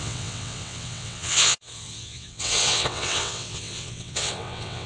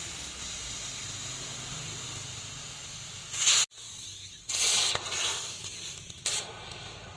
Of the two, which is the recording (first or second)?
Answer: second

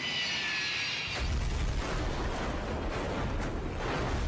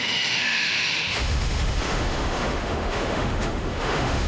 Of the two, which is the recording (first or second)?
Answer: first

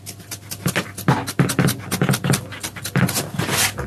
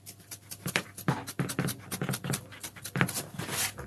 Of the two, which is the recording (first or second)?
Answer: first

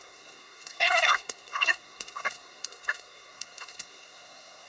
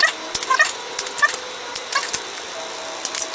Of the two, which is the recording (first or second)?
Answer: second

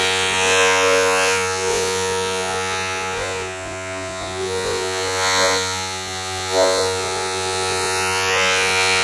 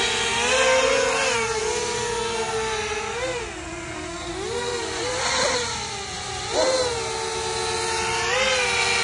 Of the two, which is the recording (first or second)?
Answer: second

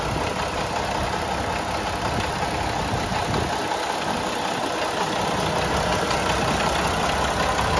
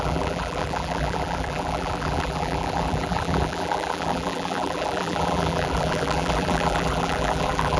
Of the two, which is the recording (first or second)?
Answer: first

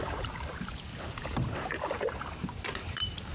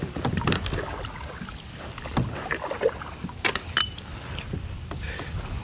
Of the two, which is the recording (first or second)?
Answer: second